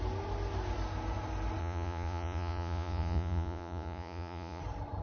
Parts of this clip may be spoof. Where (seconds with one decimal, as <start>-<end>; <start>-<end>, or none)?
1.6-4.6